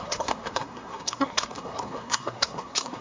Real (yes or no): no